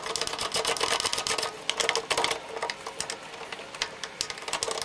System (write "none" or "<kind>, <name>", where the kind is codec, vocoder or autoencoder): none